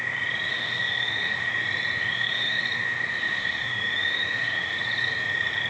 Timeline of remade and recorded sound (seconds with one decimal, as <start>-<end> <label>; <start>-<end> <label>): 0.0-0.5 recorded; 0.5-1.5 remade; 1.5-2.1 recorded; 2.1-2.6 remade; 2.6-3.2 recorded; 3.2-4.7 remade; 4.7-5.7 recorded